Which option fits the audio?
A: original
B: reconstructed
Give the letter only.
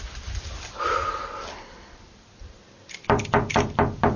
A